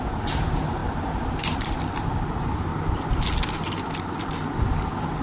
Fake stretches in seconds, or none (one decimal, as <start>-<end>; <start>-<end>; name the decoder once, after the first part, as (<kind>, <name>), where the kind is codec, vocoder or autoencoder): 0.0-2.7 (vocoder, BigVGAN v2)